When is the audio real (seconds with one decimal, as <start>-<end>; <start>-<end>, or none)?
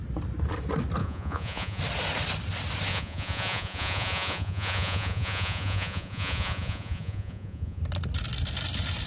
0.0-1.0; 1.8-2.9; 7.8-9.1